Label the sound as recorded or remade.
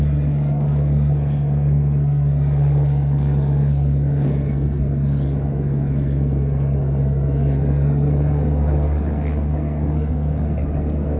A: remade